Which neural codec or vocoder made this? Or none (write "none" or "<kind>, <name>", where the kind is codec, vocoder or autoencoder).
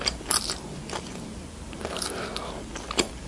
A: none